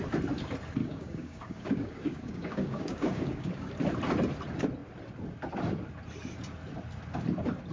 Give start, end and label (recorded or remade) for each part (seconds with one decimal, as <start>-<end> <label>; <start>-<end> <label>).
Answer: 0.0-0.8 recorded; 0.8-3.7 remade; 3.7-7.7 recorded